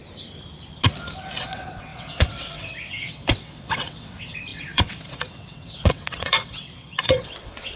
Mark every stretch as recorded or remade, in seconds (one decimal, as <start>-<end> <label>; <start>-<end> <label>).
0.0-1.4 recorded; 1.4-7.8 remade